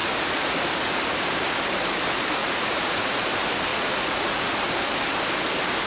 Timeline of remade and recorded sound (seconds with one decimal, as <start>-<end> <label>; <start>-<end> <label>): 0.0-2.4 recorded; 2.4-3.2 remade; 3.2-3.7 recorded; 3.7-4.4 remade; 4.4-5.9 recorded